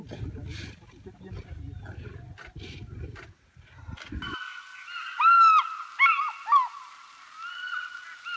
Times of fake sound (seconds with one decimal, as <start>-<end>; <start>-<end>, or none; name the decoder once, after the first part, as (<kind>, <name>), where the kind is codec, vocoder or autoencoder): none